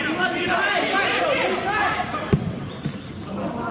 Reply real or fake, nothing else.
real